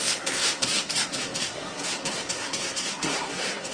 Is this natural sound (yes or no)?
no